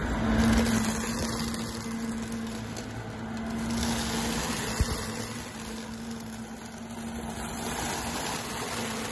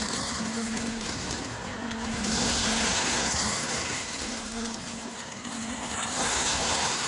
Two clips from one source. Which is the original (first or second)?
first